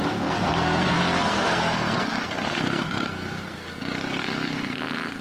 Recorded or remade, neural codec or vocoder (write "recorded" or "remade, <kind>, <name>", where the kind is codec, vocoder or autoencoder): remade, codec, SNAC